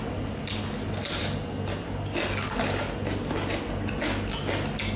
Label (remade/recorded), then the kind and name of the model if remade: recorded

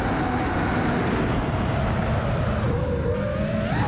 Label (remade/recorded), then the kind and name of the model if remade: recorded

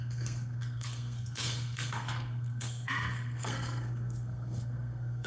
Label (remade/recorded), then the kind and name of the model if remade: remade, codec, SNAC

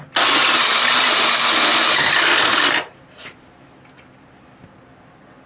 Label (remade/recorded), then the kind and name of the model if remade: recorded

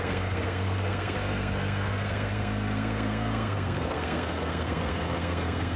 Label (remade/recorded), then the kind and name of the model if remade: remade, codec, SNAC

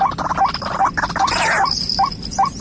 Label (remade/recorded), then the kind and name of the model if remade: recorded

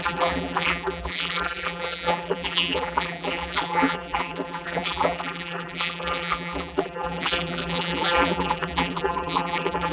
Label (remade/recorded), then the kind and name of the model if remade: remade, vocoder, BigVGAN v2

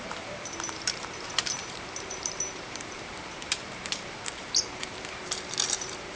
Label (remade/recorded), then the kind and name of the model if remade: remade, vocoder, BigVGAN v2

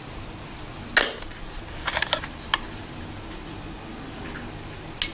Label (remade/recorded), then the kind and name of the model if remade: recorded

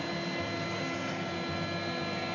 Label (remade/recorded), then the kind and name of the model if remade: recorded